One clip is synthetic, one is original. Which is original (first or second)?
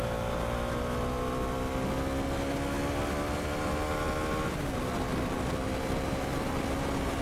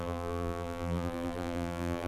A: first